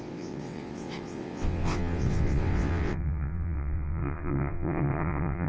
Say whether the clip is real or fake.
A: fake